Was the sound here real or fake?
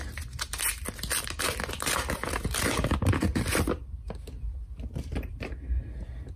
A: real